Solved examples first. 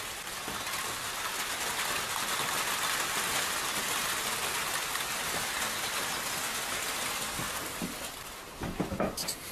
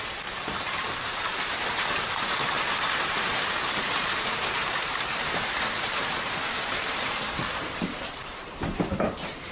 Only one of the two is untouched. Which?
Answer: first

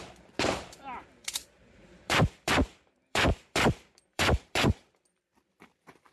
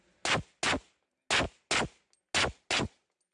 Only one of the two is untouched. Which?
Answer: second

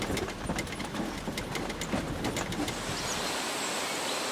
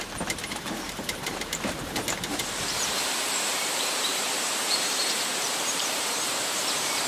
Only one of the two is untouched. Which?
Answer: first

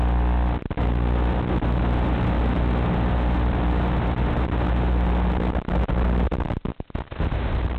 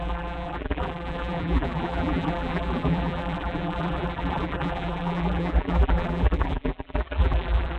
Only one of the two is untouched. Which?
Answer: first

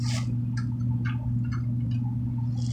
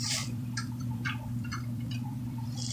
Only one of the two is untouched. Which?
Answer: first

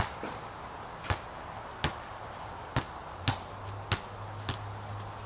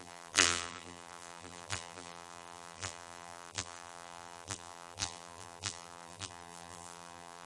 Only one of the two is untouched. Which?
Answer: first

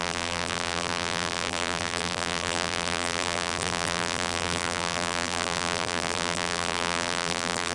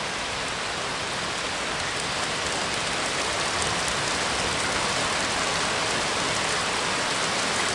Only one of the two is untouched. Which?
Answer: second